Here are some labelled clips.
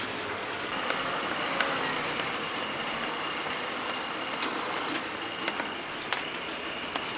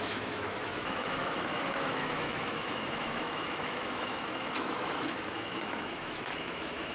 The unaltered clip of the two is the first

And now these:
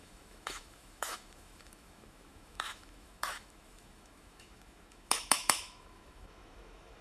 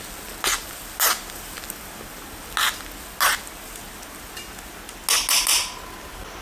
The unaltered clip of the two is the second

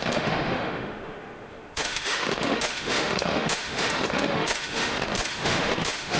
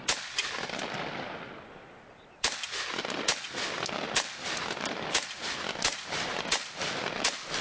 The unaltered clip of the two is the second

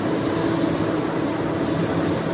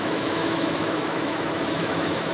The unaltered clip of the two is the first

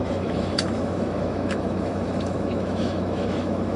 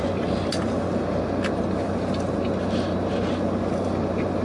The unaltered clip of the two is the second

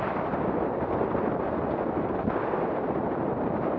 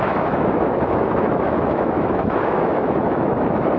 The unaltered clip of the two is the first